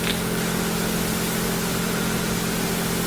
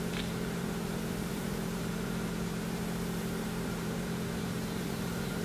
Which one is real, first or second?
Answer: first